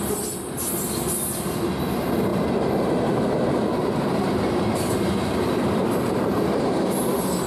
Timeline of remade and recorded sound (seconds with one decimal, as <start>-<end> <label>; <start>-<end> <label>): 0.0-2.3 recorded; 2.3-6.6 remade; 6.6-7.5 recorded